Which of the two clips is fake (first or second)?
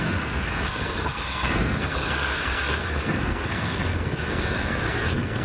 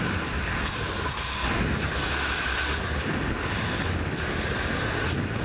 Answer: first